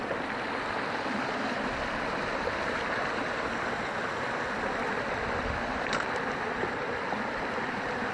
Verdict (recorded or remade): recorded